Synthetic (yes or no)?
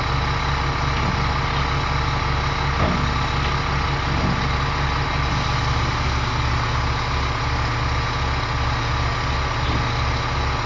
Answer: no